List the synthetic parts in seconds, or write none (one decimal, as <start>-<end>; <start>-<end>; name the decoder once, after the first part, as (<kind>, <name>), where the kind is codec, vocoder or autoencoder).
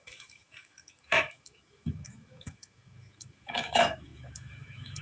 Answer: 0.0-5.0 (autoencoder, DAC-VAE)